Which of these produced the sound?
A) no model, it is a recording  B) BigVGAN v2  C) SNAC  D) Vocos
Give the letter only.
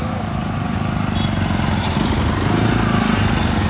A